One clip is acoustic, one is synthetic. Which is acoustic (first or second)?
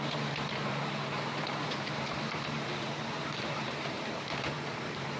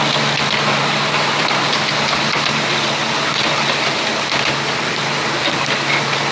second